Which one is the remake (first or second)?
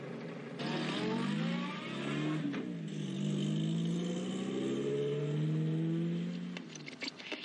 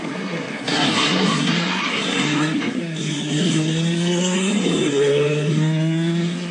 second